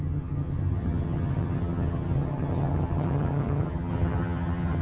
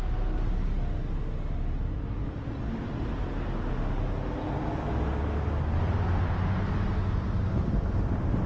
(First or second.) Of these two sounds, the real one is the second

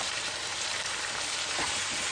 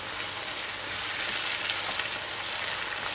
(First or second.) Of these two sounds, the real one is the second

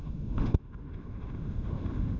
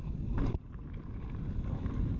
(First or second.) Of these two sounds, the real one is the second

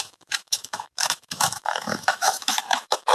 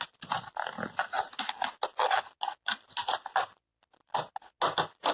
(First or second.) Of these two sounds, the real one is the second